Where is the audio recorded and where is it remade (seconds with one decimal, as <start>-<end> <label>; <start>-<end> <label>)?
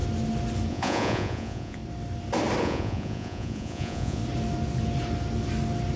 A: 0.0-0.7 recorded; 0.7-1.8 remade; 1.8-2.6 recorded; 2.6-4.2 remade; 4.2-6.0 recorded